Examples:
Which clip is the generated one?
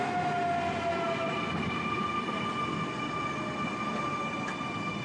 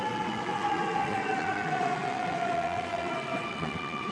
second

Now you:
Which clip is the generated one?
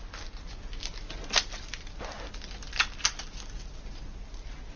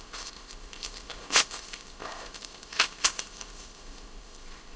second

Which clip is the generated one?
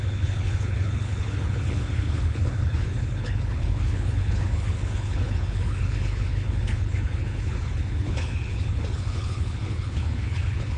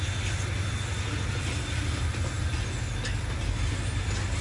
first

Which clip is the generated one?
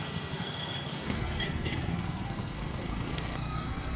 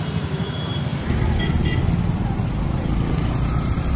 first